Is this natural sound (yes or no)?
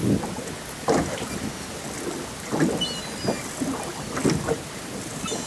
yes